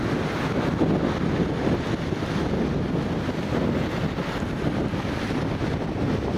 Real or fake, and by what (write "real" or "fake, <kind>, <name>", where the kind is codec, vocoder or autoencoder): real